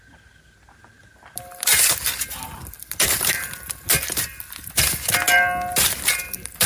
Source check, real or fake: real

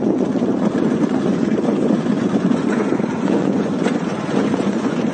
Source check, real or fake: fake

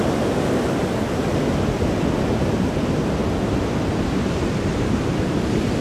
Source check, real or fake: real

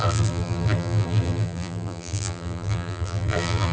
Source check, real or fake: fake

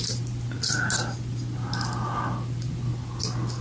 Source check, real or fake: real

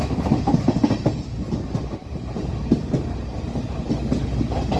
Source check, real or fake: real